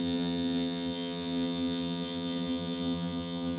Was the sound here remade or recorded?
remade